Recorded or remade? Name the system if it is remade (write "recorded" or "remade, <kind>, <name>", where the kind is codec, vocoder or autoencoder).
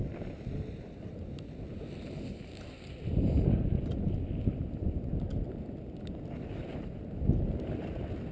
recorded